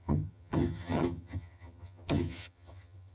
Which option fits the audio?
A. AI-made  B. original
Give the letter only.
A